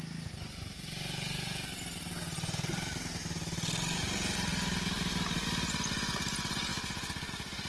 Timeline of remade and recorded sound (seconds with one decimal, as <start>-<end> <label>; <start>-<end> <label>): 0.0-6.7 recorded; 6.7-7.3 remade; 7.3-7.7 recorded